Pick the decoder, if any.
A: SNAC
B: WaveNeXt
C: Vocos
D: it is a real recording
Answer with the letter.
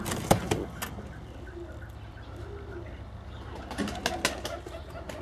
D